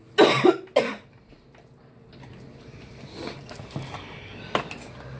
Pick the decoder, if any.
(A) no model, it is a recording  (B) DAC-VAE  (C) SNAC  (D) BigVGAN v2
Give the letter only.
A